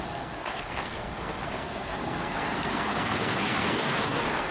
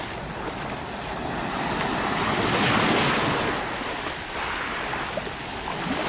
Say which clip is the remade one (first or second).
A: first